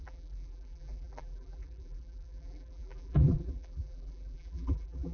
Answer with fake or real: fake